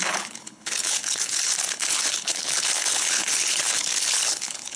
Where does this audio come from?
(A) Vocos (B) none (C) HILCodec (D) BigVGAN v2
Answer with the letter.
C